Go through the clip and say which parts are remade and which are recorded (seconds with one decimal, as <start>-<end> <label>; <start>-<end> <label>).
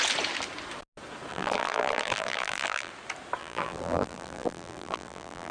0.0-1.3 recorded; 1.3-2.9 remade; 2.9-3.4 recorded; 3.4-5.5 remade